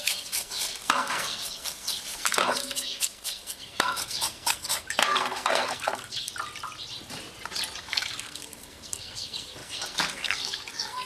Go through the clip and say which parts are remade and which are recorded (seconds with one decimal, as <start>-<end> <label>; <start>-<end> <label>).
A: 0.0-6.3 remade; 6.3-7.8 recorded; 7.8-11.1 remade